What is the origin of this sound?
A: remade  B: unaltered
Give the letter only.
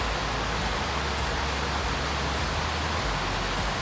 B